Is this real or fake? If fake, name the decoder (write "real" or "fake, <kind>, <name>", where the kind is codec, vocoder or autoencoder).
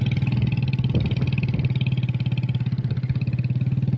real